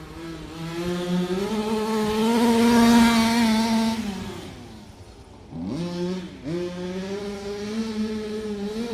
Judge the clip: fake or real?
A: real